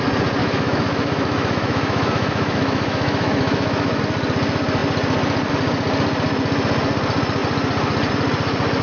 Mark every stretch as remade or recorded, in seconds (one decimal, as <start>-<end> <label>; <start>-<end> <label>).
0.0-0.4 recorded; 0.4-4.0 remade; 4.0-8.8 recorded